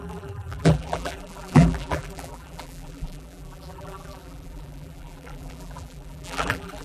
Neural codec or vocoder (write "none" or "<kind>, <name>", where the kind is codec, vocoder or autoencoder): vocoder, BigVGAN v2